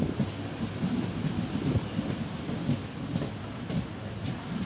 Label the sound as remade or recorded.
recorded